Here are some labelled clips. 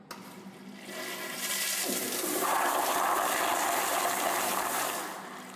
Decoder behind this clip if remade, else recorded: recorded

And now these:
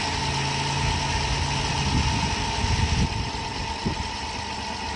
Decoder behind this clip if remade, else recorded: recorded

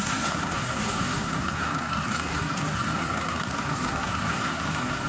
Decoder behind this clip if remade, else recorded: remade, codec, SNAC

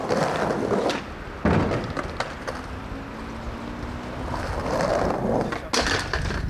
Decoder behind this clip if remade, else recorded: recorded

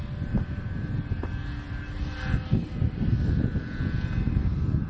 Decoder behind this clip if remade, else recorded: recorded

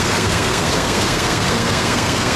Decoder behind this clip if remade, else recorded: remade, codec, SNAC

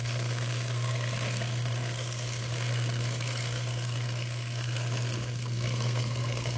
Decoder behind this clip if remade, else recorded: remade, codec, SNAC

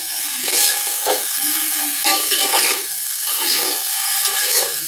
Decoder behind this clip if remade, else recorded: remade, codec, SNAC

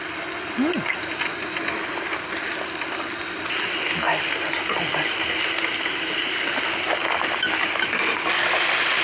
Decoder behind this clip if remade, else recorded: recorded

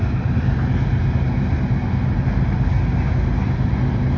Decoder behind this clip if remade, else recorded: recorded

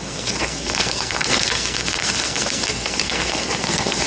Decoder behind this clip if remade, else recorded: remade, codec, SNAC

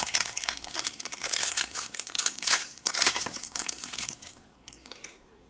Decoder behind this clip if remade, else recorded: remade, codec, SNAC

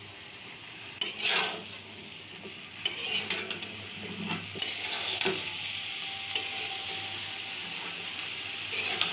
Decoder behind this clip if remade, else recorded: recorded